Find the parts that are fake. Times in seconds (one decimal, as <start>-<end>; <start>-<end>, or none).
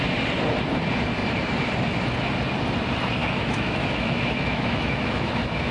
3.2-5.7